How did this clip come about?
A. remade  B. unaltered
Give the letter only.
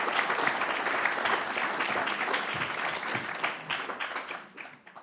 B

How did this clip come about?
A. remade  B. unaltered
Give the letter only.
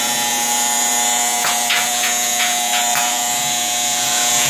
A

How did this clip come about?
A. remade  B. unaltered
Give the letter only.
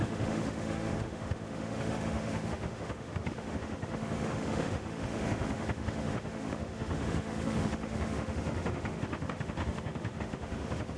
A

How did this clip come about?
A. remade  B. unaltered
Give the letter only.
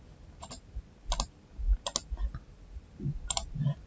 B